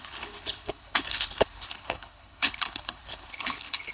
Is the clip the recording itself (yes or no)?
no